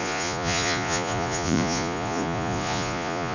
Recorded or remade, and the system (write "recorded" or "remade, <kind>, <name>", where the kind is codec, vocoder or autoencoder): remade, vocoder, Vocos